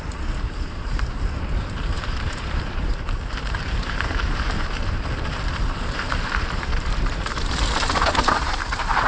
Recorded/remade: remade